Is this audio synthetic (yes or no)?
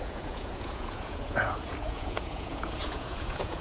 yes